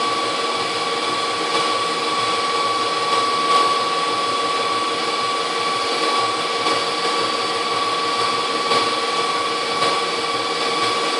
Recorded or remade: recorded